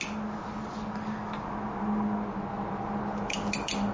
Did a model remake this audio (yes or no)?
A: no